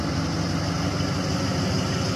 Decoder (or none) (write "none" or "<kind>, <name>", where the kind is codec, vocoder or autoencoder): none